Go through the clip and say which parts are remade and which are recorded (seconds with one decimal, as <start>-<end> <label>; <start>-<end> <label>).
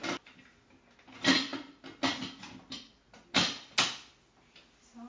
0.0-5.1 recorded